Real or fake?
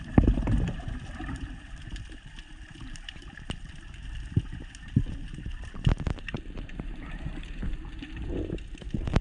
fake